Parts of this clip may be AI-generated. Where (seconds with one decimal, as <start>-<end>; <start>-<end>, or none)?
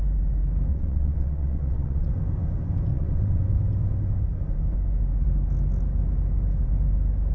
0.7-2.1; 2.9-3.4